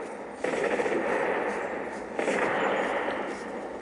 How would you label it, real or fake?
real